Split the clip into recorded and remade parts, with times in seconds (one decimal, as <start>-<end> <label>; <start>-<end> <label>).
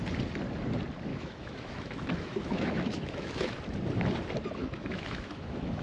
0.0-1.1 recorded; 1.1-3.5 remade; 3.5-4.6 recorded; 4.6-5.8 remade